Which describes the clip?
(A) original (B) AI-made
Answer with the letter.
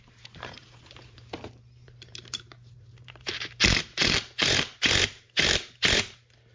B